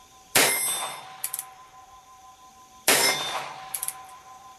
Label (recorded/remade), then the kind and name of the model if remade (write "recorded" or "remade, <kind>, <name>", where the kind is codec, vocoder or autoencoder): remade, vocoder, BigVGAN v2